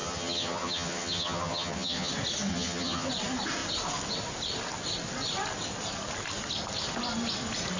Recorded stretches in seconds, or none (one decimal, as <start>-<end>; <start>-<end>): 2.1-2.5; 3.1-7.8